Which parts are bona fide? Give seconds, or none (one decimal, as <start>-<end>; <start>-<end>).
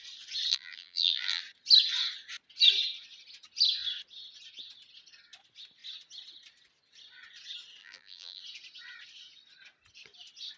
0.0-0.5; 1.4-7.8; 8.4-10.6